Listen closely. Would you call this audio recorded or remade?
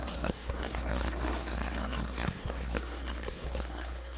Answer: remade